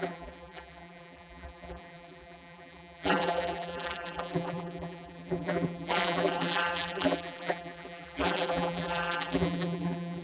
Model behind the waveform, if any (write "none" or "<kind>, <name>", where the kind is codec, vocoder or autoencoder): vocoder, BigVGAN v2